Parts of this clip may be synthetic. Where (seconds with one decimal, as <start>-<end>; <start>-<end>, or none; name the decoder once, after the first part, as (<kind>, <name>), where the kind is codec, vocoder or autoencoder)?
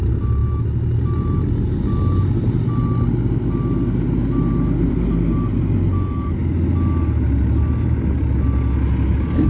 none